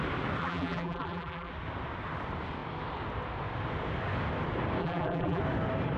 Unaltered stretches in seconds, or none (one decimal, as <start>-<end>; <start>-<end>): 0.0-0.4; 1.5-4.8; 5.4-6.0

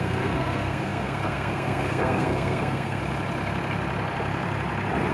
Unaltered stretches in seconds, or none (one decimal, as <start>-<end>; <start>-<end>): 3.0-5.1

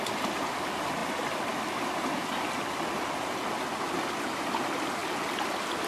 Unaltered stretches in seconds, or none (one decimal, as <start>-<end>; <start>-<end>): 0.0-5.9